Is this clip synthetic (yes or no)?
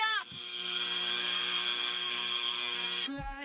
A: yes